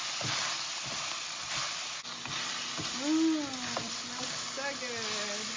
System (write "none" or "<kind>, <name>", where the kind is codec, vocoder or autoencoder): none